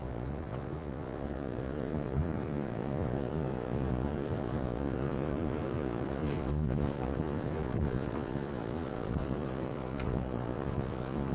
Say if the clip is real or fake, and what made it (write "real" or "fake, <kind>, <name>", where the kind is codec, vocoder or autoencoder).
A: fake, vocoder, Vocos